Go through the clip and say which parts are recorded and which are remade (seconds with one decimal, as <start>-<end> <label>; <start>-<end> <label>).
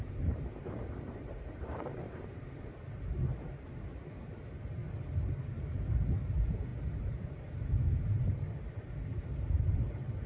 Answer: 0.0-4.8 remade; 4.8-5.3 recorded; 5.3-10.3 remade